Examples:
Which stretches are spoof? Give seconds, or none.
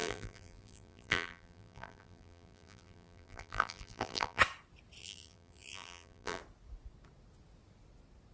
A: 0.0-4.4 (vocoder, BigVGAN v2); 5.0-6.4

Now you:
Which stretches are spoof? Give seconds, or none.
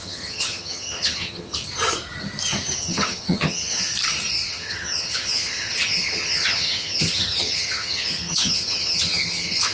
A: 0.0-1.6 (vocoder, HiFi-GAN); 2.8-3.9; 4.5-9.7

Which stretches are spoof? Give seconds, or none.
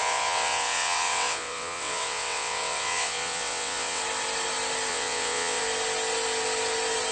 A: 0.0-4.0 (vocoder, WaveNeXt); 4.9-5.6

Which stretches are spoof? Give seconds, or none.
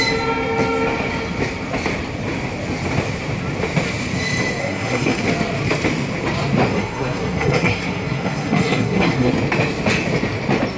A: 4.6-5.2 (codec, SNAC); 6.7-9.3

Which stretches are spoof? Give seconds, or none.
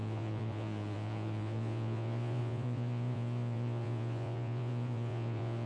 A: 0.0-5.7 (vocoder, Vocos)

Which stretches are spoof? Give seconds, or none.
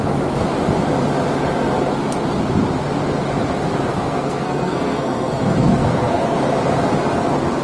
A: 3.9-6.4 (codec, SNAC)